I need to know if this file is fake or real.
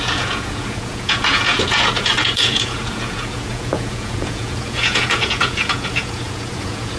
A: fake